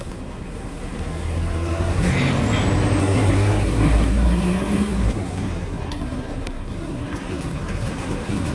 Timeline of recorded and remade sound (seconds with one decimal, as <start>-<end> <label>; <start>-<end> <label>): 0.0-2.1 remade; 2.1-3.0 recorded; 3.0-8.5 remade

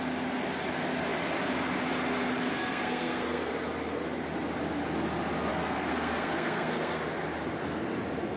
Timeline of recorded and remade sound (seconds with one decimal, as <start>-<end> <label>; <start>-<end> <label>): 0.0-2.5 recorded; 2.5-3.5 remade; 3.5-5.5 recorded; 5.5-7.0 remade; 7.0-8.4 recorded

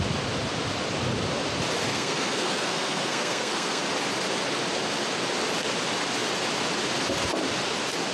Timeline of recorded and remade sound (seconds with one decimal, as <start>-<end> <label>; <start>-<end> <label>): 0.0-1.9 recorded; 1.9-3.8 remade; 3.8-8.1 recorded

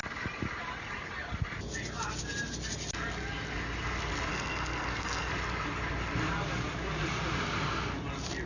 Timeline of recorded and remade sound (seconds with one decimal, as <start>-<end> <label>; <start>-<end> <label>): 0.0-4.3 recorded; 4.3-5.3 remade; 5.3-8.5 recorded

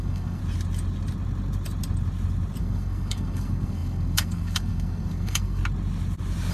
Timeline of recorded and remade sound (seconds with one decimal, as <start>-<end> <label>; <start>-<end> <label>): 0.0-0.4 remade; 0.4-2.6 recorded; 2.6-5.6 remade; 5.6-6.5 recorded